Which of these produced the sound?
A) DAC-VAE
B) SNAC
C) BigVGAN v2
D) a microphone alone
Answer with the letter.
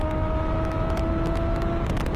D